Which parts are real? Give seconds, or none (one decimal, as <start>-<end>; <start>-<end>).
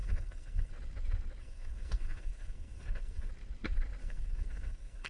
0.7-1.4; 3.3-4.0